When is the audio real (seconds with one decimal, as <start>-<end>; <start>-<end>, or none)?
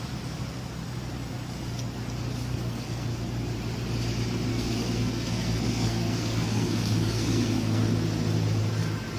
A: 0.0-2.5; 3.2-4.5; 7.9-9.2